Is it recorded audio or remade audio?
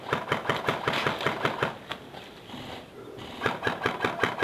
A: recorded